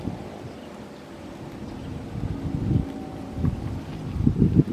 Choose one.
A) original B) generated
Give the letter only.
A